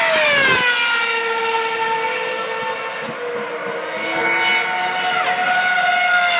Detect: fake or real real